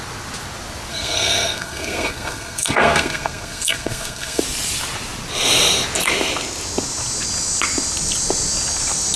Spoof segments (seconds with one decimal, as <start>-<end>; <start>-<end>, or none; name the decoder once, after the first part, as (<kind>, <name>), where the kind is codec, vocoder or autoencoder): 0.9-4.4 (codec, SNAC)